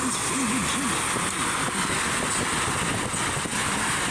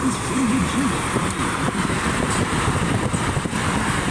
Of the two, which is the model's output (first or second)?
second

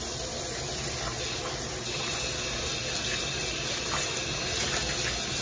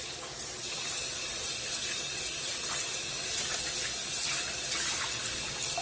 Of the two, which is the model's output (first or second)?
second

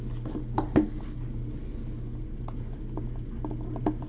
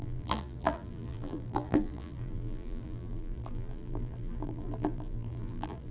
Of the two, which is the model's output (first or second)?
second